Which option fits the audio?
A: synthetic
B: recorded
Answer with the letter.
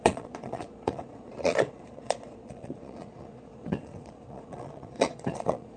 A